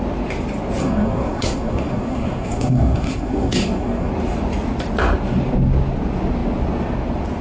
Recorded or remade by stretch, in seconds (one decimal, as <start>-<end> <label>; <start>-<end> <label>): 0.0-0.8 recorded; 0.8-4.1 remade; 4.1-7.4 recorded